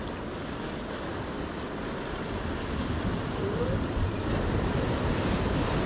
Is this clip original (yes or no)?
yes